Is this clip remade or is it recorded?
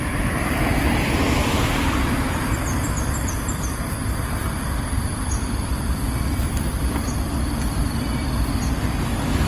remade